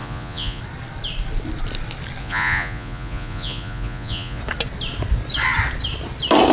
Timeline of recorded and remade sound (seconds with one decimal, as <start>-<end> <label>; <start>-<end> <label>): 0.0-0.6 remade; 0.6-2.2 recorded; 2.2-4.4 remade; 4.4-6.5 recorded